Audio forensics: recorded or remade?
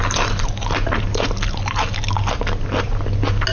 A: recorded